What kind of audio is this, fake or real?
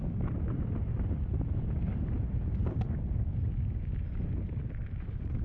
real